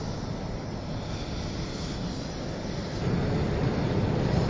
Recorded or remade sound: recorded